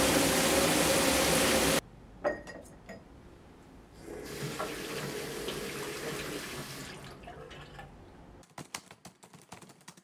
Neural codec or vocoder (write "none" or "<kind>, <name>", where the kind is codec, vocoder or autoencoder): none